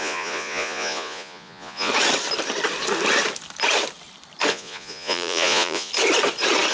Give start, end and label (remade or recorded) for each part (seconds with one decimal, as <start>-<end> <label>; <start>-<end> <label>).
0.0-1.9 remade; 1.9-4.5 recorded; 4.5-5.9 remade; 5.9-6.7 recorded